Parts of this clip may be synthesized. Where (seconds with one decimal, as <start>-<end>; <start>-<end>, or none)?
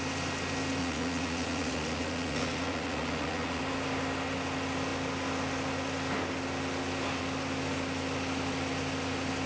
0.8-3.6